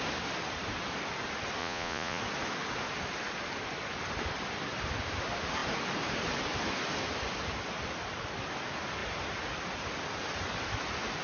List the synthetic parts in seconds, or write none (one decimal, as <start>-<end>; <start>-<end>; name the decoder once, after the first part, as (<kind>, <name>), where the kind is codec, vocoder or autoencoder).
1.6-2.2 (vocoder, Vocos)

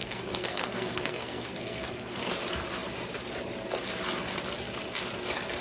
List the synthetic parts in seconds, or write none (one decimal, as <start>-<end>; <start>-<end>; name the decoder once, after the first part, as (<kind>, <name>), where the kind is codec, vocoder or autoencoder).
0.0-2.3 (codec, SNAC)